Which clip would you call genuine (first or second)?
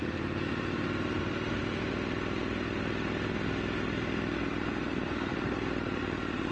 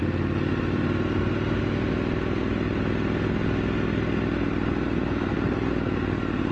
second